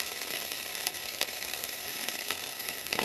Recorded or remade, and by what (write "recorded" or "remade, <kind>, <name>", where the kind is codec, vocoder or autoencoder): remade, codec, SNAC